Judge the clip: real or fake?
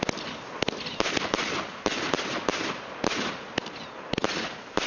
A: real